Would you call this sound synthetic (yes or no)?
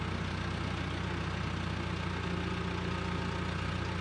no